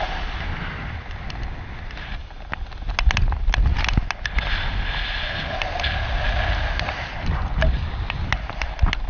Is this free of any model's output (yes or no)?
yes